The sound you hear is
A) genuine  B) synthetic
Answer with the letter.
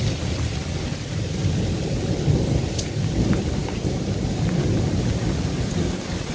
A